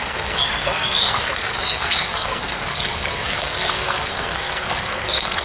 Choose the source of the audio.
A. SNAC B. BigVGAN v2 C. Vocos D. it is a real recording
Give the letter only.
A